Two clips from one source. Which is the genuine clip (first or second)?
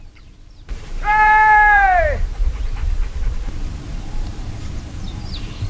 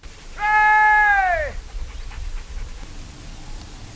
second